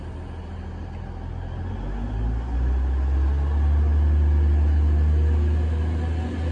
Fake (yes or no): no